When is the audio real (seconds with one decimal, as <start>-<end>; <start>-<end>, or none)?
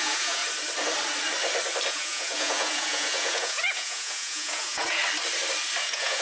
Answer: 0.4-1.9; 5.0-5.8